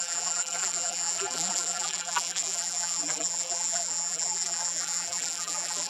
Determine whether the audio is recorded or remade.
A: remade